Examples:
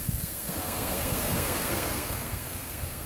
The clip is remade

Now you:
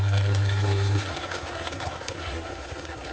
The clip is remade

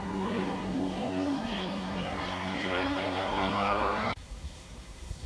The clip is remade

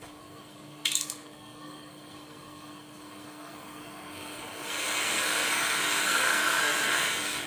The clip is remade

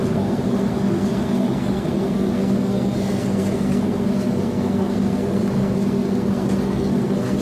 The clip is remade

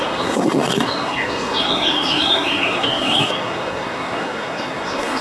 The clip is remade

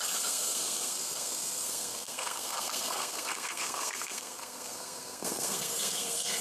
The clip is remade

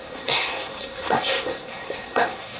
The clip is remade